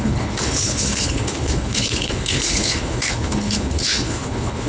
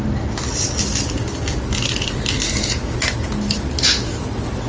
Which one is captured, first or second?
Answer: second